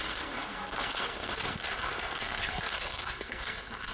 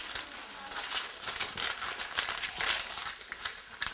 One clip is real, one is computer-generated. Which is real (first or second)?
second